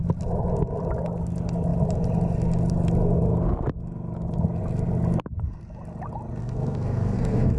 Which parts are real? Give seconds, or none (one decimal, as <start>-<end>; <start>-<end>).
0.0-6.4